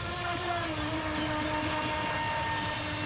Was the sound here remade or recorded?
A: recorded